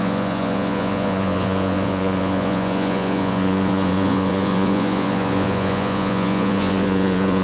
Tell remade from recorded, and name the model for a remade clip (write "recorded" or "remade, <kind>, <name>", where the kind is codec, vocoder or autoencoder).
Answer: remade, vocoder, Vocos